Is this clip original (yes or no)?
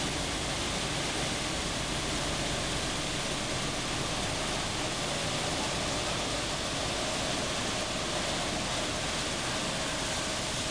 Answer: yes